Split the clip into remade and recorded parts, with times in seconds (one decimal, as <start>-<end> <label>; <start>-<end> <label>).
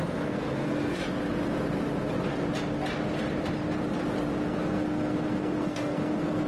0.0-1.0 remade; 1.0-4.4 recorded; 4.4-6.5 remade